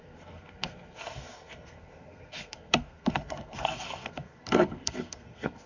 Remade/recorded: remade